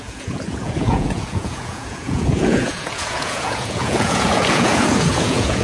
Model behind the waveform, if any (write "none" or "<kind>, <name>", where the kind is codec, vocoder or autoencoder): vocoder, Vocos